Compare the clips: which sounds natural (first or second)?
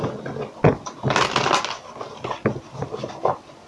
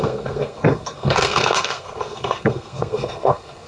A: first